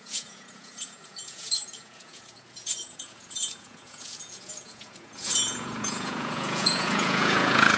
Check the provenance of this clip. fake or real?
fake